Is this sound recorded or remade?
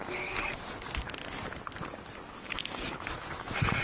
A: recorded